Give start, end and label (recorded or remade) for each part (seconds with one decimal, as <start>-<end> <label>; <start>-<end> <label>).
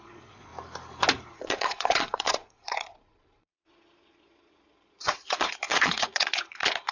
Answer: 0.0-0.5 remade; 0.5-1.4 recorded; 1.4-6.9 remade